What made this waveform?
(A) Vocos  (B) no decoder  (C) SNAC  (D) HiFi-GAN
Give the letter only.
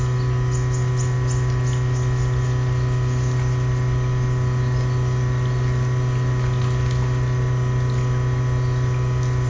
B